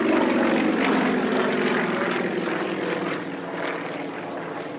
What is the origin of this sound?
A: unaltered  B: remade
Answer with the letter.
A